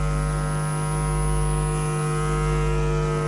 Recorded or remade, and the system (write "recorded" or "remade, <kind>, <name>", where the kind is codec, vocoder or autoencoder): recorded